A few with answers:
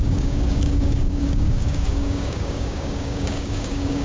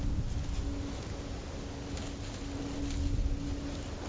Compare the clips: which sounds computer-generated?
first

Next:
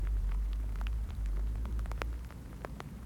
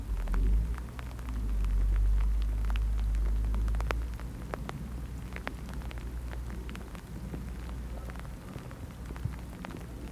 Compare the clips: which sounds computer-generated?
first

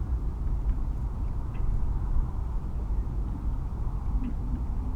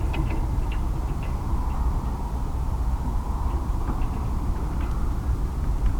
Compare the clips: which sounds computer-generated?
second